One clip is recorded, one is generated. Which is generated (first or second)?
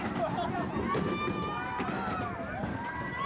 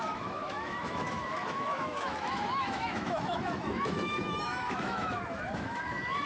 second